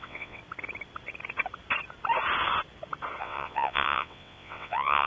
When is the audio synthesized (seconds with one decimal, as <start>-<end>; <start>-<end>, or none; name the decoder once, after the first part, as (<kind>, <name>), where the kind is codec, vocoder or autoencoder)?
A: 0.0-0.4 (vocoder, WaveNeXt); 3.2-5.1